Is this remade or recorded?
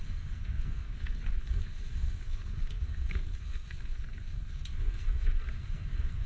remade